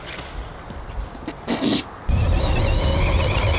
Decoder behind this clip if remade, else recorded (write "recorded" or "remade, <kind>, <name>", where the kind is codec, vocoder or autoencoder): recorded